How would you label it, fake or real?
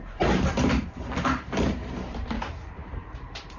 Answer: fake